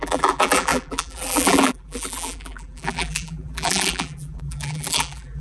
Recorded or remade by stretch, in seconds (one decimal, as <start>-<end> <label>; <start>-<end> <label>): 0.0-5.4 remade